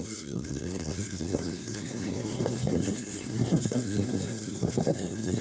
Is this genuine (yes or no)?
no